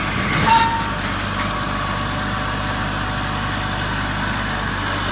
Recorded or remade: recorded